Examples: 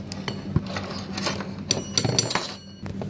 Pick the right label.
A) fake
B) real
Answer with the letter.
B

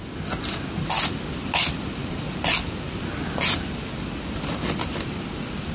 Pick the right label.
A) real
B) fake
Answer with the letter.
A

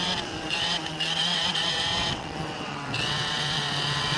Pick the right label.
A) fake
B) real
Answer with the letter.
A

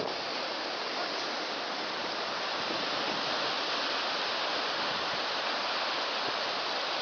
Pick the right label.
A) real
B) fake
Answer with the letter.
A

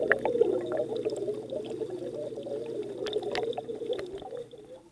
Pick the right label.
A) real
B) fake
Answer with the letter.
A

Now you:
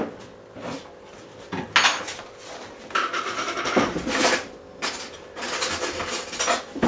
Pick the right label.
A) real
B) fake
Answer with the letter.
A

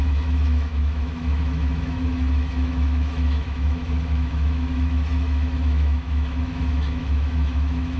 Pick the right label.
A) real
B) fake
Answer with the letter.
B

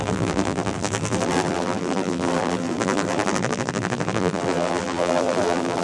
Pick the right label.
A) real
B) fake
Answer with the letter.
B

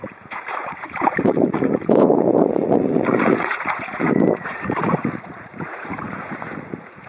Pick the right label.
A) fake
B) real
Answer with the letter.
A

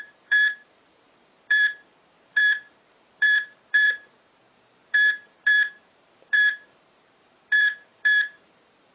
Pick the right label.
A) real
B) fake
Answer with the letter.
B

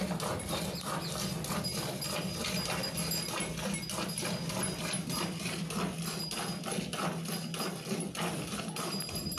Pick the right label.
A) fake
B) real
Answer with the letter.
B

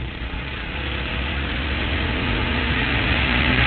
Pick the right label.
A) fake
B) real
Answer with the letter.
A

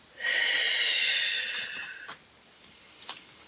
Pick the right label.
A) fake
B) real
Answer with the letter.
B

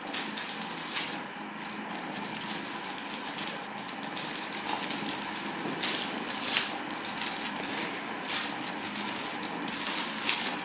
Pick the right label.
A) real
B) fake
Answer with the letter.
A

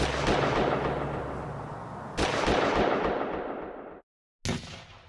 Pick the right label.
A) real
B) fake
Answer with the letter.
A